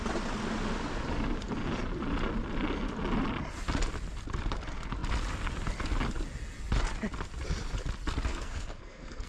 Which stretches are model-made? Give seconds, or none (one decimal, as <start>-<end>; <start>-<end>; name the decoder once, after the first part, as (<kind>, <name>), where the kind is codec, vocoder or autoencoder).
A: 8.3-9.3 (codec, SNAC)